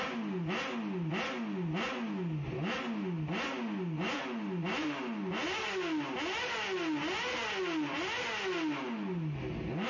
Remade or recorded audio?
recorded